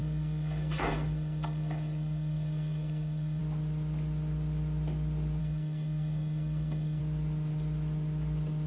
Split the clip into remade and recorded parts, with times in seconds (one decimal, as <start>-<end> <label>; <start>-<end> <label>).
0.0-3.4 remade; 3.4-5.4 recorded; 5.4-7.0 remade; 7.0-8.7 recorded